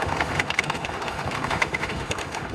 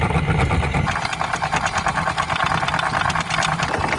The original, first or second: second